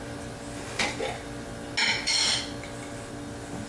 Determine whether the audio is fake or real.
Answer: real